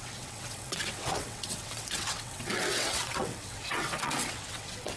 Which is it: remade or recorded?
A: remade